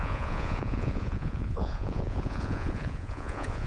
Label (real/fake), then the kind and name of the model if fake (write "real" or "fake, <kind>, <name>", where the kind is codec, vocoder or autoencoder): fake, vocoder, Vocos